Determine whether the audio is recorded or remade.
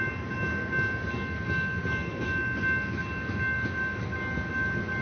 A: recorded